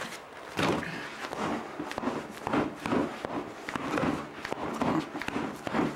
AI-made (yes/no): no